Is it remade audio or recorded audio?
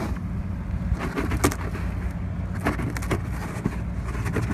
recorded